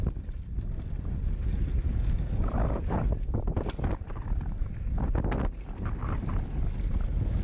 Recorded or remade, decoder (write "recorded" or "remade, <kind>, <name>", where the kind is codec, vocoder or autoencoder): recorded